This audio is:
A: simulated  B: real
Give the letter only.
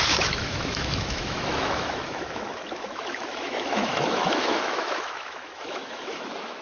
A